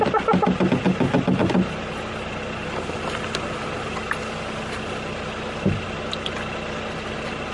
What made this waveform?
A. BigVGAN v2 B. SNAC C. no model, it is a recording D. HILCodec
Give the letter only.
C